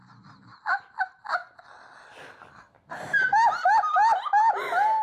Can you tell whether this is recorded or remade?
recorded